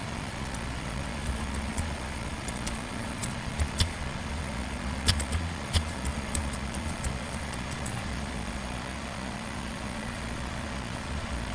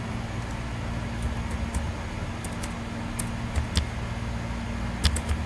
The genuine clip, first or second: second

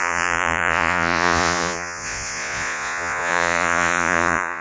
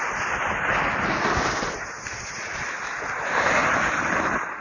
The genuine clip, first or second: second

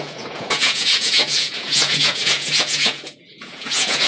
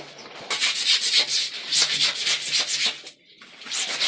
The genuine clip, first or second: second